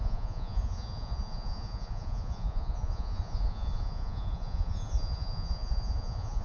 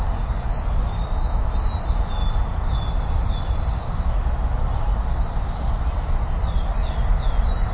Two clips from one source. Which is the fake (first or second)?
first